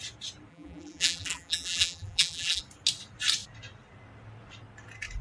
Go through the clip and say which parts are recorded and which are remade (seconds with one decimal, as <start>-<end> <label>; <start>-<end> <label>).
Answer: 0.0-0.5 recorded; 0.5-2.6 remade; 2.6-5.2 recorded